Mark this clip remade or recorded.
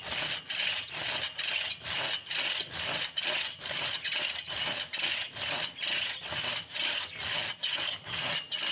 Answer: recorded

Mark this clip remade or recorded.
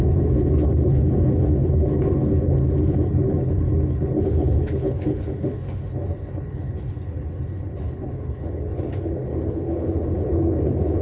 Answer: remade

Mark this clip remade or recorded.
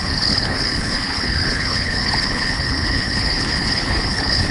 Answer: remade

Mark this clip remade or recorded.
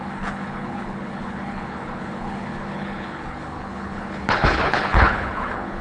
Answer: remade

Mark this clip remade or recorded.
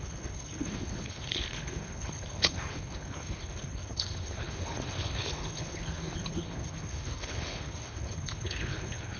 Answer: remade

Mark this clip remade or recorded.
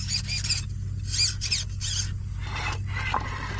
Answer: recorded